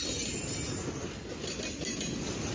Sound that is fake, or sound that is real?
real